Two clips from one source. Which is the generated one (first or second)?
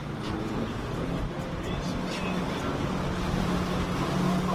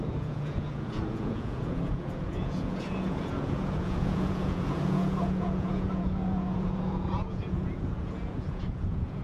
second